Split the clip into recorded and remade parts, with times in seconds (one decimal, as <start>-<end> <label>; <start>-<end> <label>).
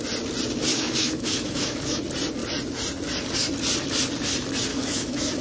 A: 0.0-0.7 recorded; 0.7-2.0 remade; 2.0-4.7 recorded; 4.7-5.4 remade